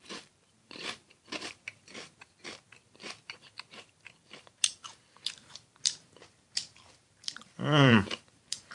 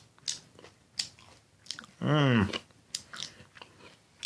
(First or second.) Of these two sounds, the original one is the second